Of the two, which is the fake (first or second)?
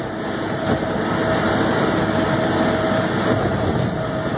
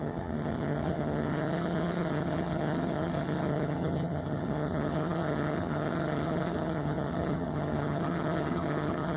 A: second